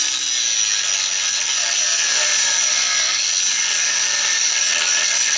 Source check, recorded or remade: recorded